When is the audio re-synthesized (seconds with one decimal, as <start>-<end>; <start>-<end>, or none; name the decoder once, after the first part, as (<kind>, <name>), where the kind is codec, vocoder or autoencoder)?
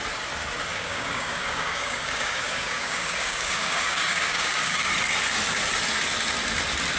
0.7-4.9 (codec, DAC)